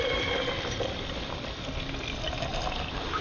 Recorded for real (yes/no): yes